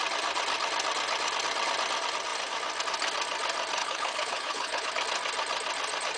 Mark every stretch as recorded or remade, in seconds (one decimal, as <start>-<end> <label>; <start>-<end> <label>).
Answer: 0.0-3.8 recorded; 3.8-4.9 remade; 4.9-6.2 recorded